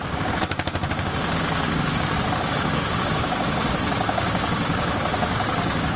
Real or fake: fake